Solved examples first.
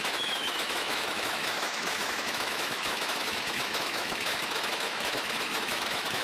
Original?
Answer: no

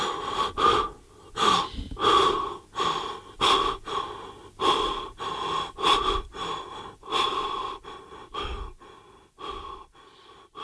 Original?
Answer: yes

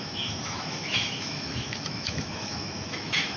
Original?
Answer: no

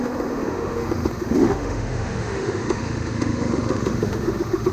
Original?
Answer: no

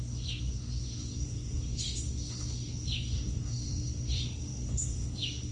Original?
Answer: no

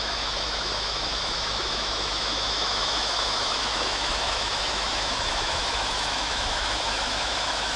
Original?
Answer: no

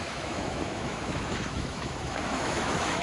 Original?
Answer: no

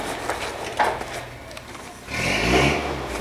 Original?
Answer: yes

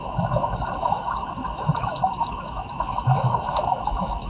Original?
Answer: no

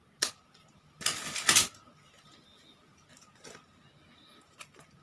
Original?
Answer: yes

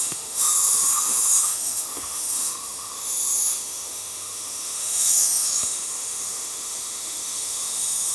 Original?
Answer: no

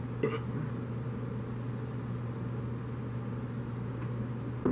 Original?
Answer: yes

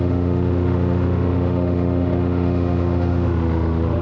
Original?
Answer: no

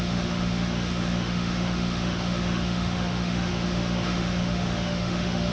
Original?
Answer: no